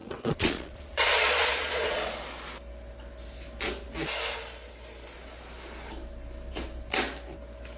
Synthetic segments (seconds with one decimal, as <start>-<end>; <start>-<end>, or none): 0.0-2.1